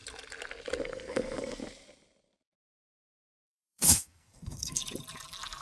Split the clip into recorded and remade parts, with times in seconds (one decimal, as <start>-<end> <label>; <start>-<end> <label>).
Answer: 0.0-0.8 recorded; 0.8-1.6 remade; 1.6-2.7 recorded; 2.7-4.8 remade; 4.8-5.6 recorded